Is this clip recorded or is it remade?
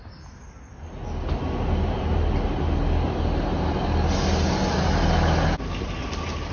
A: recorded